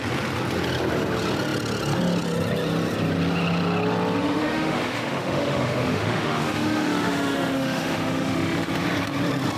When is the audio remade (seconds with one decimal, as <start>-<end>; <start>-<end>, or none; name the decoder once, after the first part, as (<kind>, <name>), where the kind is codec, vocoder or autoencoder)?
4.2-8.7 (autoencoder, DAC-VAE)